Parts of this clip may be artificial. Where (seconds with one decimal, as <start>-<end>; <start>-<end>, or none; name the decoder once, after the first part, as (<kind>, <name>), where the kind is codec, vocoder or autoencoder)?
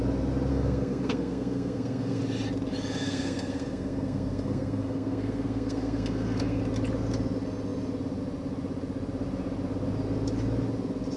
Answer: 0.5-2.2 (codec, SNAC); 3.0-6.6